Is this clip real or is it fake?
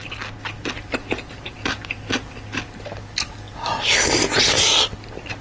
real